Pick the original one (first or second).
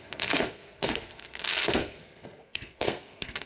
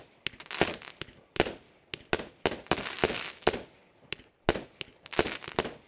second